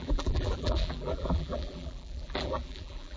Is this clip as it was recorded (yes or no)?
no